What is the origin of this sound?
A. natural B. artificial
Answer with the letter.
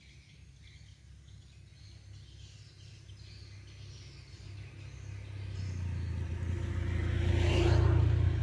A